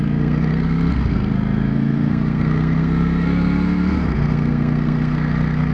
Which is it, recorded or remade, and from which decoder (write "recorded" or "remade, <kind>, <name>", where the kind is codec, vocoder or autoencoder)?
remade, codec, SNAC